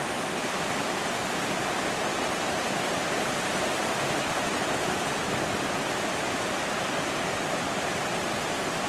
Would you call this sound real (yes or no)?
no